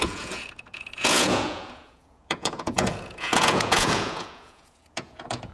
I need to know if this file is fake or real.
fake